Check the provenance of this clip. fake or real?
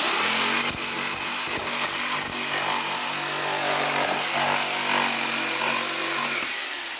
real